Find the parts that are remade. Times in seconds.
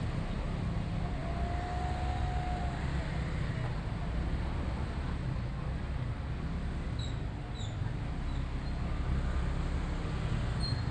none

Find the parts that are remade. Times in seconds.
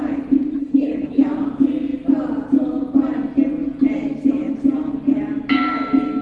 0.6-1.2 (codec, HILCodec)